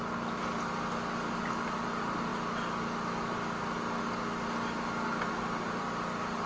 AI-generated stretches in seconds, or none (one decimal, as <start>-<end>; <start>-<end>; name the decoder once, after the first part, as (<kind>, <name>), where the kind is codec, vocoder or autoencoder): none